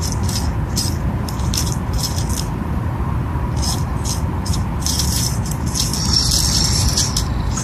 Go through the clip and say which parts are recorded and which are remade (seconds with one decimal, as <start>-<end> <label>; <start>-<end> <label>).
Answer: 0.0-4.5 recorded; 4.5-5.5 remade; 5.5-7.6 recorded